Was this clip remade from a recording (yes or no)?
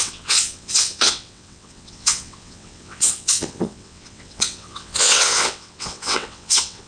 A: yes